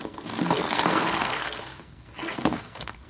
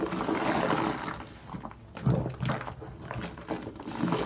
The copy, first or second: first